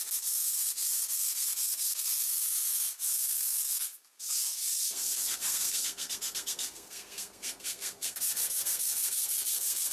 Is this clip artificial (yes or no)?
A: yes